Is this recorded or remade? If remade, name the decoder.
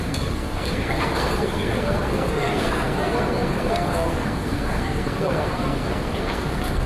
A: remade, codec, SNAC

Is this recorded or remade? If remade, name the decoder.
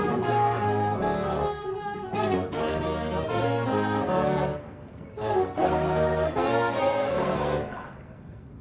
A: remade, codec, SNAC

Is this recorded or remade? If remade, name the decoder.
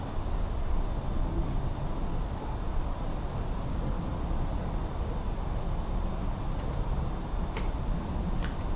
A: recorded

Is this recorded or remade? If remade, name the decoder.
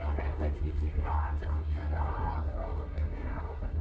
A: remade, codec, SNAC